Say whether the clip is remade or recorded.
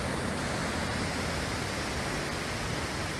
recorded